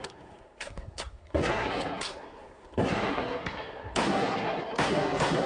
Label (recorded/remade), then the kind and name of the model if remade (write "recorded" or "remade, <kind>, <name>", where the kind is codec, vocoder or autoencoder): remade, codec, SNAC